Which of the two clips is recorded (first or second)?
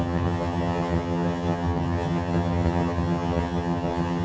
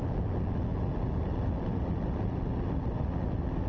second